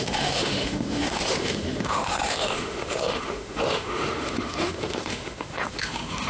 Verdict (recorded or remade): remade